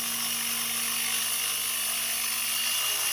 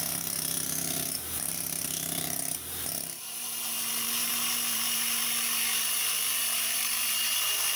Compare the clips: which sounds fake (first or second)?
second